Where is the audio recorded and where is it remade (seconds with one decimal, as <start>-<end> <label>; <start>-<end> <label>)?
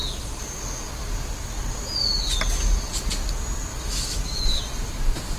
0.0-3.7 recorded; 3.7-4.6 remade; 4.6-5.4 recorded